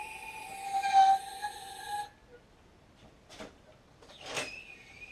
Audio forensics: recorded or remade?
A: recorded